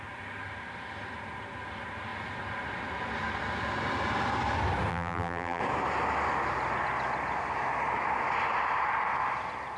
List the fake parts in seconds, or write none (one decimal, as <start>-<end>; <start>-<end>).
4.9-5.6